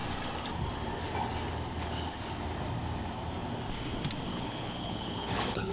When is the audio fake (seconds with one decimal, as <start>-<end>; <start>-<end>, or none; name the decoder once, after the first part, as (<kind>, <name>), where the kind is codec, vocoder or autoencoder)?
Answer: 4.3-5.7 (codec, HILCodec)